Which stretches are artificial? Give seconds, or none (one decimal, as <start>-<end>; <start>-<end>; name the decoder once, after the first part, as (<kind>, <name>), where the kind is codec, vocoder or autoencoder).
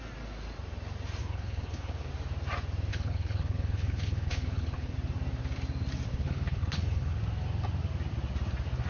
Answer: 1.2-2.1 (codec, HILCodec); 2.9-4.9; 6.1-7.2